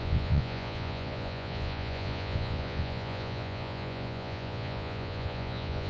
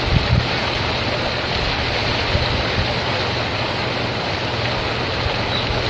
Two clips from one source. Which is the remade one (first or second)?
first